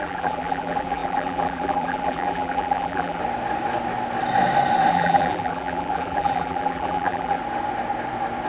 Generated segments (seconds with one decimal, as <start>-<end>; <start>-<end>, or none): 0.0-3.2; 4.9-7.4